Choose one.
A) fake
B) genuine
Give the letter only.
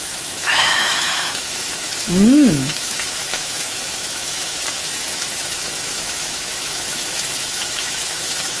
A